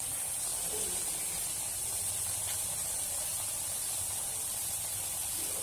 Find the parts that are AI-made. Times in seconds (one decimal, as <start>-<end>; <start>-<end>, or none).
none